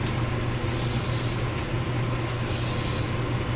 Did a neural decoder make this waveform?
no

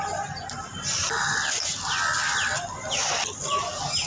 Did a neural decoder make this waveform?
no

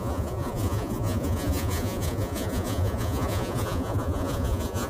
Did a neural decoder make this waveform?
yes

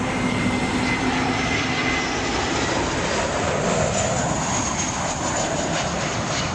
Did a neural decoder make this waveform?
no